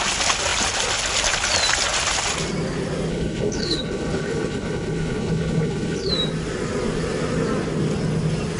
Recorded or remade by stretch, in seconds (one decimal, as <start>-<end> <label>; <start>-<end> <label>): 0.0-3.1 recorded; 3.1-6.1 remade; 6.1-8.6 recorded